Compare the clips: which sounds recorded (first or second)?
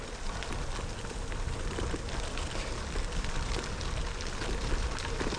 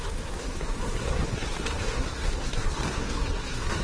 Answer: first